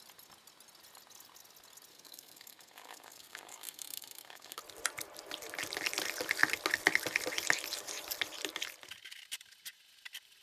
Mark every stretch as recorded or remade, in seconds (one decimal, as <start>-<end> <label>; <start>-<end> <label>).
0.0-1.9 recorded; 1.9-4.6 remade; 4.6-10.4 recorded